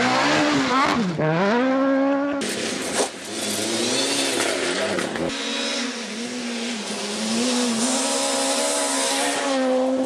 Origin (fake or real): real